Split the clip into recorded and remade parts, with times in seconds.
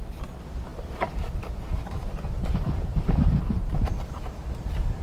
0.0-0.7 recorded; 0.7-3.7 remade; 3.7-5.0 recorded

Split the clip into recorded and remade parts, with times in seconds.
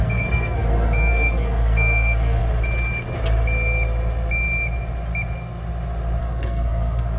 0.0-2.4 remade; 2.4-6.2 recorded; 6.2-7.2 remade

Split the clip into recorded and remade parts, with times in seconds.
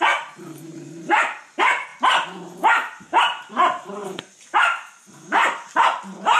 0.0-1.9 remade; 1.9-3.2 recorded; 3.2-6.4 remade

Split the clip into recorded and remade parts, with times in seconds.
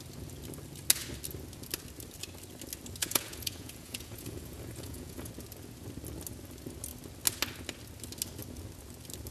0.0-3.0 recorded; 3.0-5.3 remade; 5.3-9.3 recorded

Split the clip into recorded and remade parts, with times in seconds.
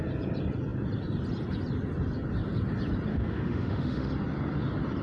0.0-3.1 recorded; 3.1-4.1 remade; 4.1-5.0 recorded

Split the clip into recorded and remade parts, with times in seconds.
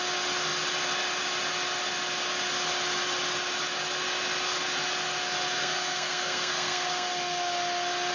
0.0-5.6 recorded; 5.6-7.1 remade; 7.1-8.1 recorded